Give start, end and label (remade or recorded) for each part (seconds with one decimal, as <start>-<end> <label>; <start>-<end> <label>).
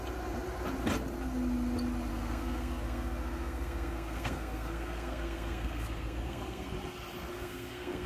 0.0-2.1 recorded; 2.1-6.7 remade; 6.7-7.3 recorded; 7.3-8.1 remade